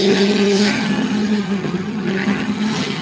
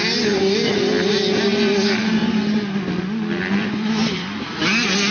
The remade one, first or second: first